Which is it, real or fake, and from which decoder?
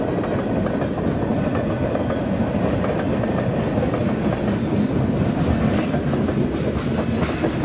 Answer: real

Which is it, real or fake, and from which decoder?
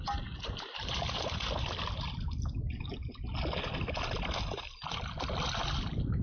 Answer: real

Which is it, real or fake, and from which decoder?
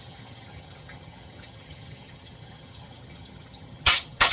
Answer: fake, vocoder, HiFi-GAN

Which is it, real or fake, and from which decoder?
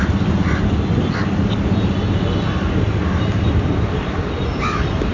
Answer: real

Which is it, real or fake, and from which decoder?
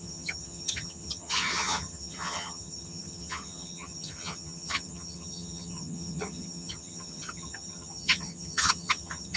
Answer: fake, vocoder, HiFi-GAN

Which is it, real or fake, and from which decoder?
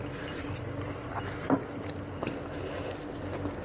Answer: real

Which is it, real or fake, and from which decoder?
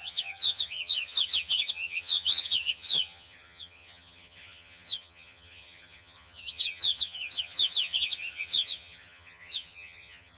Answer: fake, vocoder, HiFi-GAN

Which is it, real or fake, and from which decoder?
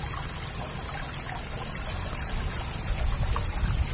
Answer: real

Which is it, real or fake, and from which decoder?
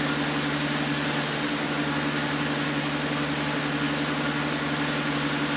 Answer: real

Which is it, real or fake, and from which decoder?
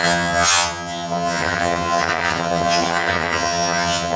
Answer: fake, vocoder, HiFi-GAN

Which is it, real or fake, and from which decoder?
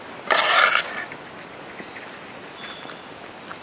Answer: real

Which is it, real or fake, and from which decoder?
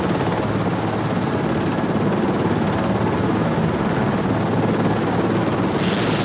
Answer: real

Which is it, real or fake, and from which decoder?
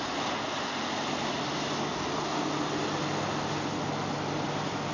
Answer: real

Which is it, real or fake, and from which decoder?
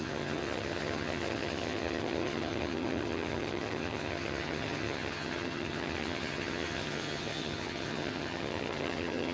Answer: fake, vocoder, HiFi-GAN